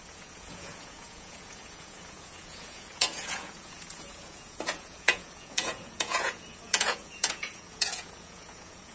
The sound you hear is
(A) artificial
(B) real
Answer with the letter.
A